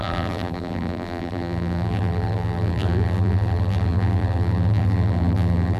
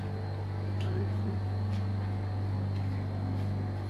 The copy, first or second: first